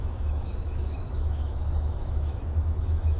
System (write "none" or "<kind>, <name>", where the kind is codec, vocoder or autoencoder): autoencoder, DAC-VAE